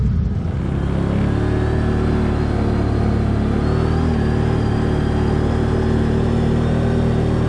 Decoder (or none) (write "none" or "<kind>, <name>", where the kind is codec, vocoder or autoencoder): none